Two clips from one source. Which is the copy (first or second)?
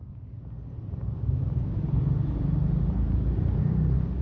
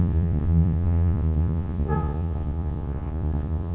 second